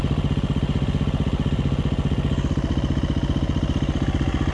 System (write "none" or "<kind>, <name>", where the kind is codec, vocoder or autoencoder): none